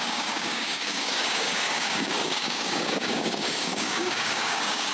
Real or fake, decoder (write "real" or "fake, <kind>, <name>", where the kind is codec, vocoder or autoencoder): fake, codec, DAC